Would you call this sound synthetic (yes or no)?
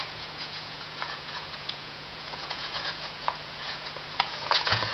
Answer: yes